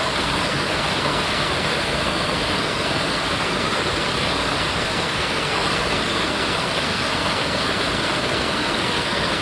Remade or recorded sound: remade